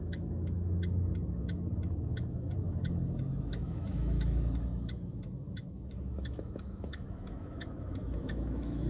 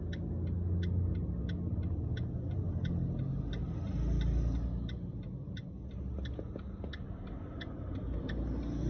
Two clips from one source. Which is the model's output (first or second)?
first